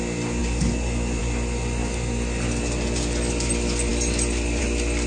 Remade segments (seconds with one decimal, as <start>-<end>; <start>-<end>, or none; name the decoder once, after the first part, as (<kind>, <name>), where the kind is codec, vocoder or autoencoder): none